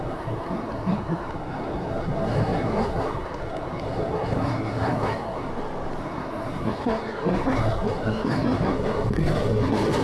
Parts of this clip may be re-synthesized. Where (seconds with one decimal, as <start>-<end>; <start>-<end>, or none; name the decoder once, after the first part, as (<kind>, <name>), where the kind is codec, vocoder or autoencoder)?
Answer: 0.0-5.5 (codec, SNAC); 6.0-10.0